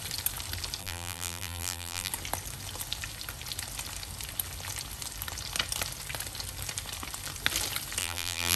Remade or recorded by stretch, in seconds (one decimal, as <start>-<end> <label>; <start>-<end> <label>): 0.0-0.8 recorded; 0.8-2.1 remade; 2.1-8.0 recorded; 8.0-8.6 remade